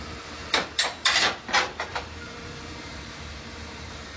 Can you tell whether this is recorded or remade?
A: remade